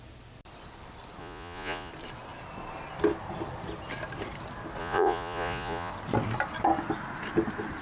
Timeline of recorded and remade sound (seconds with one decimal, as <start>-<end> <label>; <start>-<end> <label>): 0.0-1.2 recorded; 1.2-1.9 remade; 1.9-4.8 recorded; 4.8-5.9 remade; 5.9-7.8 recorded